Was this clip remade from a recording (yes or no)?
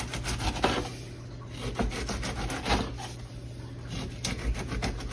no